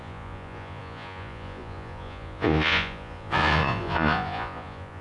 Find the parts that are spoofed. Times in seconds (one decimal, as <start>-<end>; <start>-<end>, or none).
0.0-5.0